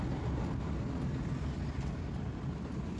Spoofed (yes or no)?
no